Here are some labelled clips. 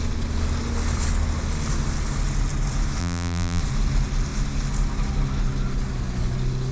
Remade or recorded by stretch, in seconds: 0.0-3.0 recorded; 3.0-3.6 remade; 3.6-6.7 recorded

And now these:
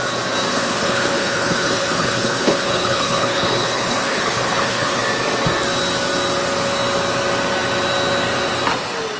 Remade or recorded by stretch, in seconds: 0.0-0.5 recorded; 0.5-5.0 remade; 5.0-9.2 recorded

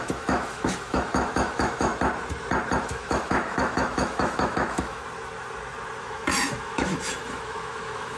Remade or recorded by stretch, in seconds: 0.0-1.9 remade; 1.9-2.8 recorded; 2.8-5.0 remade; 5.0-6.0 recorded; 6.0-8.2 remade

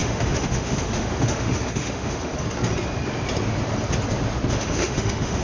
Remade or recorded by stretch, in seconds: 0.0-2.3 remade; 2.3-4.5 recorded; 4.5-5.4 remade

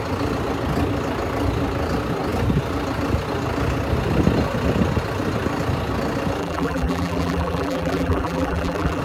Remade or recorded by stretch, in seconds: 0.0-6.4 recorded; 6.4-9.0 remade

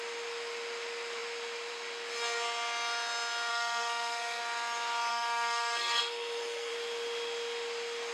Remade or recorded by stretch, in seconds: 0.0-3.5 recorded; 3.5-4.4 remade; 4.4-5.1 recorded; 5.1-6.7 remade; 6.7-8.1 recorded